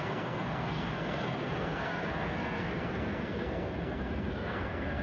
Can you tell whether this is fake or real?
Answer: fake